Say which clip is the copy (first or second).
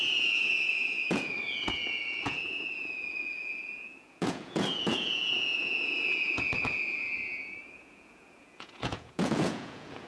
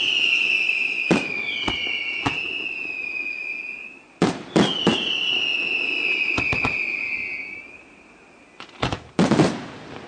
first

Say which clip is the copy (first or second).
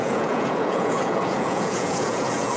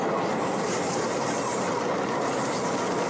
first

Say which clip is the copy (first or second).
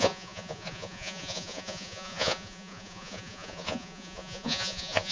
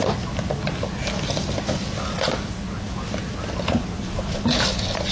first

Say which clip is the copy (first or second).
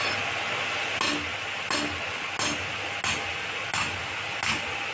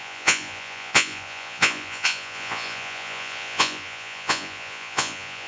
second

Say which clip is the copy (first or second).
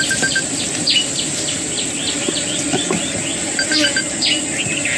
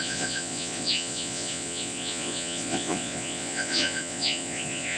second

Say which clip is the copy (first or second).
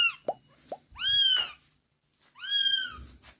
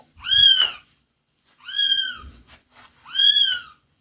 second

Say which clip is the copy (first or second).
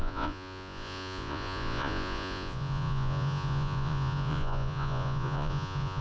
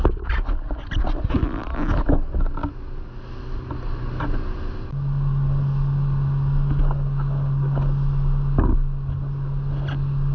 first